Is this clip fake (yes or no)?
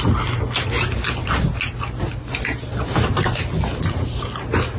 no